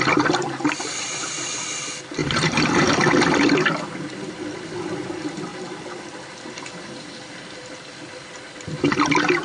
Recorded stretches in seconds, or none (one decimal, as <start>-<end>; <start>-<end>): 0.0-2.2; 2.9-9.4